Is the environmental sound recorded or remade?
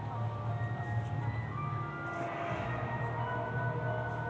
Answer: recorded